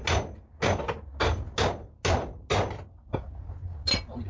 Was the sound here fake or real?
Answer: real